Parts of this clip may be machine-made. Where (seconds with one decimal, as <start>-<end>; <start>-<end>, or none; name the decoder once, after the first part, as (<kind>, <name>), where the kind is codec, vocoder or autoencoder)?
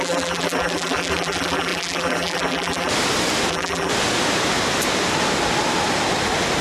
0.0-2.9 (vocoder, BigVGAN v2); 3.5-3.9